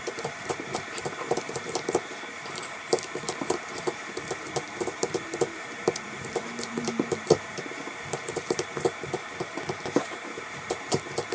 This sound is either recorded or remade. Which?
remade